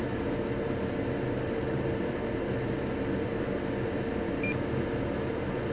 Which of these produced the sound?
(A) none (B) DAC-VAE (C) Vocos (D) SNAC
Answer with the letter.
A